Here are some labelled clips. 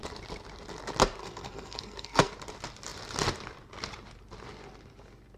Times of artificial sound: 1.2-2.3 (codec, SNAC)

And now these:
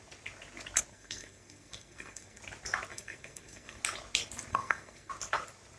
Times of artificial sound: 0.9-2.4 (codec, SNAC); 2.9-3.8; 4.5-5.1

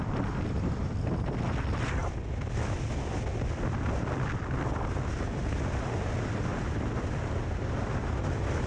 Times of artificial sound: none

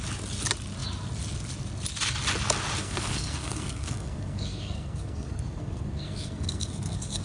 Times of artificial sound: 2.8-7.2 (codec, SNAC)

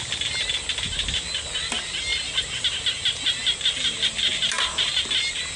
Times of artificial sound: none

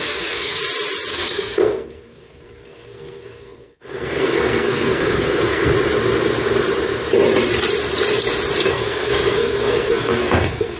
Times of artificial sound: 0.0-0.6 (codec, SNAC); 1.1-5.7; 8.7-10.8

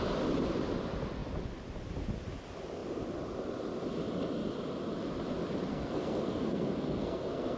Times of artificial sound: 5.7-7.6 (codec, SNAC)

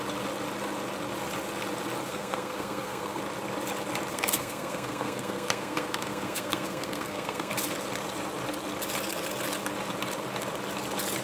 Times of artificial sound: 2.1-3.2 (codec, SNAC); 4.1-7.5